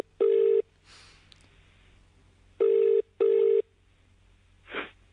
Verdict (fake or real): real